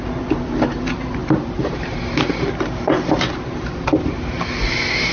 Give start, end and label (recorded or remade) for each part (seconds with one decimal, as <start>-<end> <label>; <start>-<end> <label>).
0.0-1.2 recorded; 1.2-4.2 remade; 4.2-5.1 recorded